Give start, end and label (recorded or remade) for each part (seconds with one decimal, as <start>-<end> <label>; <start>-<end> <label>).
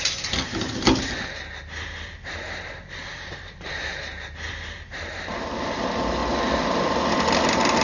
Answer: 0.0-6.2 recorded; 6.2-7.0 remade; 7.0-7.8 recorded